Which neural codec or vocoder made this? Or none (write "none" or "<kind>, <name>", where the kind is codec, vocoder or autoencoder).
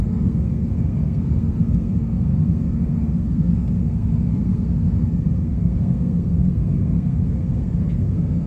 codec, SNAC